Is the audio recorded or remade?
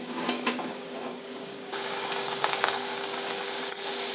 remade